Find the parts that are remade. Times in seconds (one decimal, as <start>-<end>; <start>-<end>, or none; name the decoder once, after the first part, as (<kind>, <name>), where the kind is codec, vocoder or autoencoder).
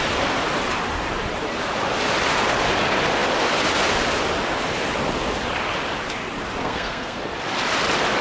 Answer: 6.6-7.2 (codec, SNAC)